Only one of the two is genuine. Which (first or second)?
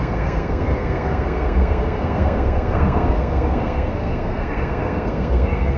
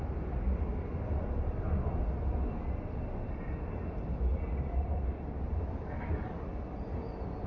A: second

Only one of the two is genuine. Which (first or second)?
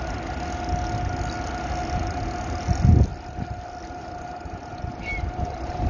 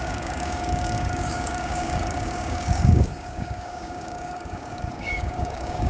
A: first